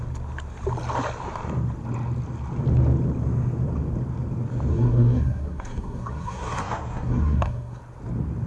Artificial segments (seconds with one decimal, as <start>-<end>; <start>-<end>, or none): 4.7-7.8